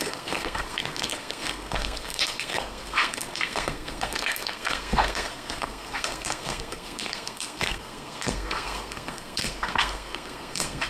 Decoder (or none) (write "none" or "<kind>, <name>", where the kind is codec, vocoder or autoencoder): codec, SNAC